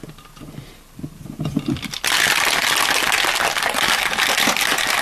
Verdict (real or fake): real